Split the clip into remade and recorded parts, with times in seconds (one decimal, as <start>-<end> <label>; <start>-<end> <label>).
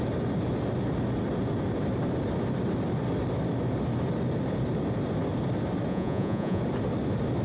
0.0-5.9 recorded; 5.9-6.6 remade; 6.6-7.4 recorded